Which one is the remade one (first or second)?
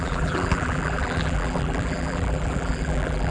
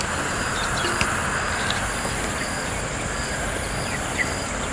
first